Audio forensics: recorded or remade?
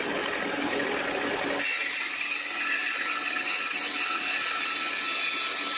recorded